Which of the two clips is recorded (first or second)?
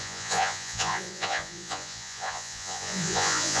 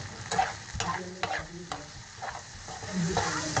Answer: second